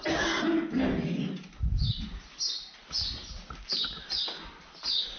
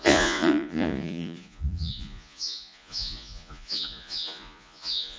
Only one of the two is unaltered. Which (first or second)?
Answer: first